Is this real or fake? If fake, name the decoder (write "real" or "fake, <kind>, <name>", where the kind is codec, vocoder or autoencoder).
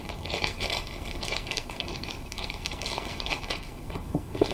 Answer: fake, codec, SNAC